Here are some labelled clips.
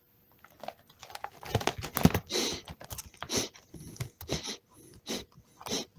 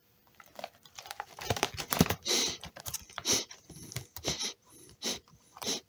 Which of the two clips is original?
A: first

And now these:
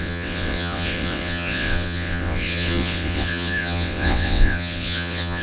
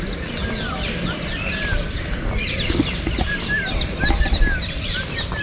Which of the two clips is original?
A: second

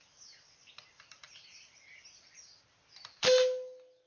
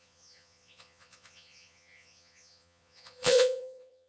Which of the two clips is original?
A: first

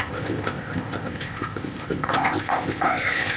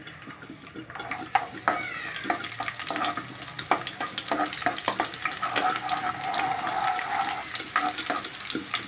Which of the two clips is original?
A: second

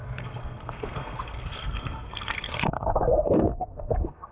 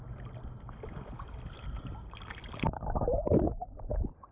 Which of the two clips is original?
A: second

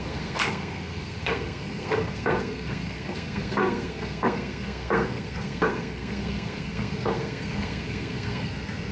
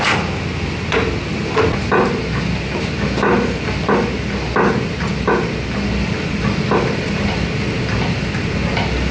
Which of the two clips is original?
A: second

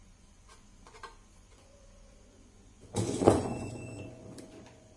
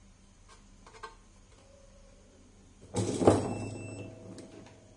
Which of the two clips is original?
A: second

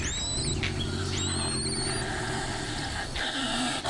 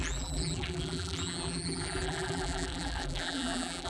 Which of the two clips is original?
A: first